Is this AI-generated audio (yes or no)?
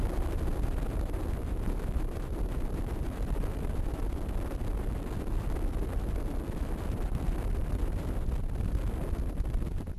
no